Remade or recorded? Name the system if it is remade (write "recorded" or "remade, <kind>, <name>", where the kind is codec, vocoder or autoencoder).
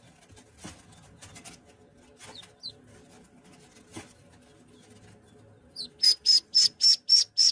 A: recorded